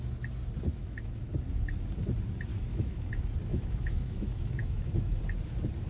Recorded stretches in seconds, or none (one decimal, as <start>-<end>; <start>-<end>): 0.0-0.7; 1.3-2.5; 3.1-3.5; 5.2-5.9